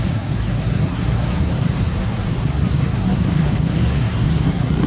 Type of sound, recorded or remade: remade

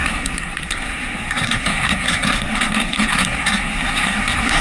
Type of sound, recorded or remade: remade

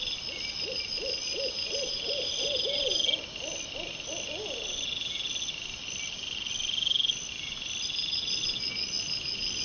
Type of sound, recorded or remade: recorded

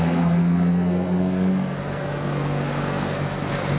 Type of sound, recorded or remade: remade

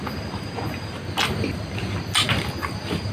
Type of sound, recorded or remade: recorded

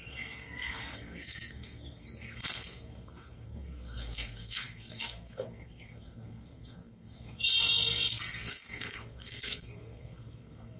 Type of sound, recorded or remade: remade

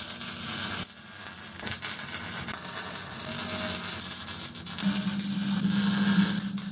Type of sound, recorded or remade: recorded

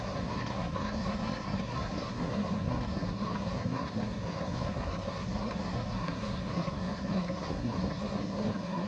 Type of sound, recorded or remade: remade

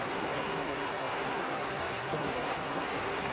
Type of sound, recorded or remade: remade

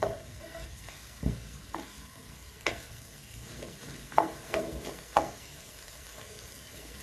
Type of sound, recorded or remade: remade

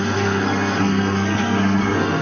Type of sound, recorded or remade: remade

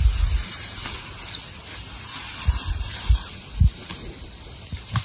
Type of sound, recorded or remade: recorded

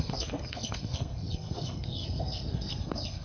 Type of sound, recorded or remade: remade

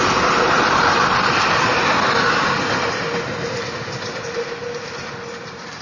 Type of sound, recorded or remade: recorded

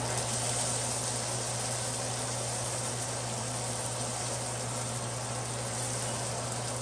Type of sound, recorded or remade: recorded